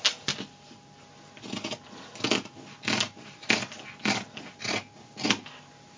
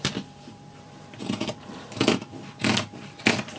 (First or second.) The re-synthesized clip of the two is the second